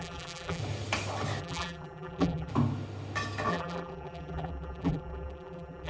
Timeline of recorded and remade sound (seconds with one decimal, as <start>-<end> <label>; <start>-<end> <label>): 0.0-0.6 remade; 0.6-1.4 recorded; 1.4-2.5 remade; 2.5-3.5 recorded; 3.5-5.9 remade